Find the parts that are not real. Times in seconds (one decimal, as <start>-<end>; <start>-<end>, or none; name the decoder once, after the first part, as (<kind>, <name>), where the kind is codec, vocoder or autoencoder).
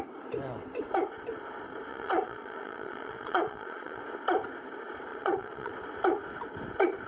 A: 1.9-4.0 (vocoder, Vocos); 5.1-5.7